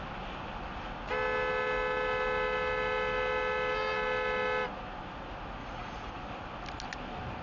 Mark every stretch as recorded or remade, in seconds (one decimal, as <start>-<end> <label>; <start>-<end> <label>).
0.0-5.6 recorded; 5.6-6.1 remade; 6.1-7.4 recorded